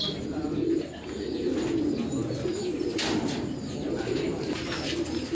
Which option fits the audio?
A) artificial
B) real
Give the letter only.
B